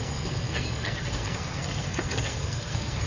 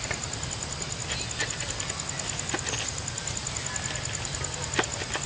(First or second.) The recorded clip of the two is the second